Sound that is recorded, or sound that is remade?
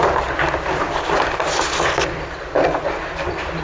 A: recorded